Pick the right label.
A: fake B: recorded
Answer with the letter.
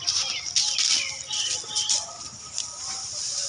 B